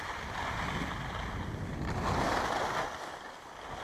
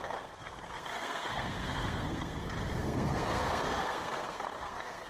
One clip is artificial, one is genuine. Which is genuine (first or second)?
first